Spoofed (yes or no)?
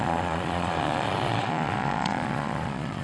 yes